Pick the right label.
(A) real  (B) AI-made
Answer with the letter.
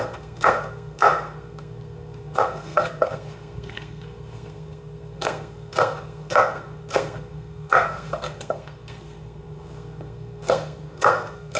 B